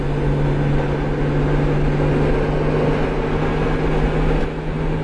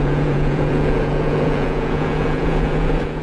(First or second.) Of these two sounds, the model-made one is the second